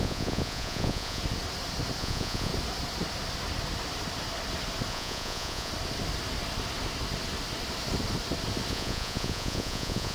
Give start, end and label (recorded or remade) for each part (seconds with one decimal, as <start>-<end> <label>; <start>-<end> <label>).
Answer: 0.0-1.2 remade; 1.2-2.0 recorded; 2.0-2.5 remade; 2.5-4.9 recorded; 4.9-5.7 remade; 5.7-8.7 recorded; 8.7-10.1 remade